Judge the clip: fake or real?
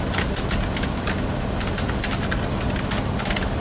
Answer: real